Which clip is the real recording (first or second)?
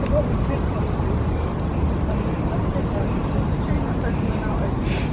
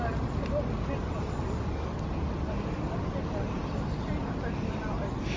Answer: second